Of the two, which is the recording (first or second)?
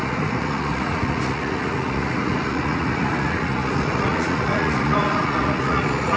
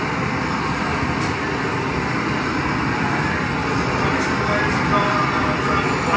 second